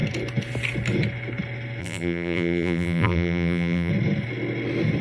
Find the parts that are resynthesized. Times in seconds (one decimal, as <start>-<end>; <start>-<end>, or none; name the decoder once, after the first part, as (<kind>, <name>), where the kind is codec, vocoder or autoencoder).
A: 1.8-3.9 (vocoder, BigVGAN v2)